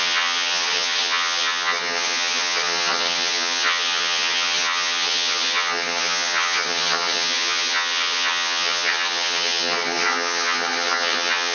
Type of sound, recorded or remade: remade